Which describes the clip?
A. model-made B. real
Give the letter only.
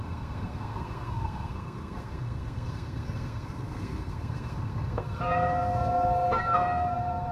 A